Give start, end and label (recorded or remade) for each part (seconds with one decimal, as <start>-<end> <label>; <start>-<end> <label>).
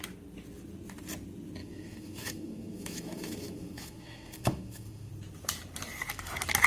0.0-1.6 recorded; 1.6-5.1 remade; 5.1-6.7 recorded